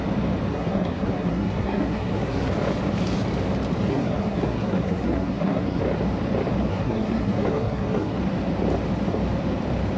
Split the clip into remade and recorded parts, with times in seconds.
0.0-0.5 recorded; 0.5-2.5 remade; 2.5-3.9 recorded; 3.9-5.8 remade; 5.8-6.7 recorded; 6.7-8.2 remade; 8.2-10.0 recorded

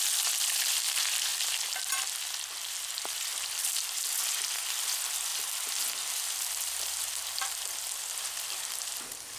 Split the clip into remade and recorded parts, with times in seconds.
0.0-9.4 recorded

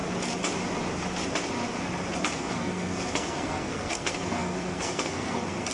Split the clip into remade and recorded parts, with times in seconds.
0.0-2.2 recorded; 2.2-5.7 remade

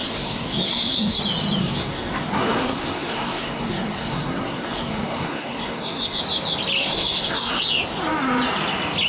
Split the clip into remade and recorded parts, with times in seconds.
0.0-1.2 remade; 1.2-1.6 recorded; 1.6-6.2 remade; 6.2-6.8 recorded; 6.8-7.6 remade; 7.6-9.1 recorded

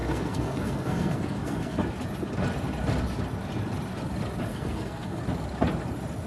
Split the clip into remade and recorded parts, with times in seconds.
0.0-1.8 remade; 1.8-4.5 recorded; 4.5-5.2 remade; 5.2-6.3 recorded

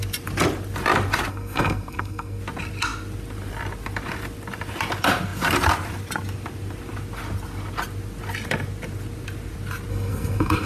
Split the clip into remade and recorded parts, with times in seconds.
0.0-1.3 recorded; 1.3-2.4 remade; 2.4-9.9 recorded; 9.9-10.7 remade